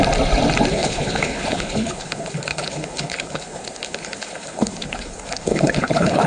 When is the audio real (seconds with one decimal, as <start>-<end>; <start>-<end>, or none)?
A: 0.0-0.7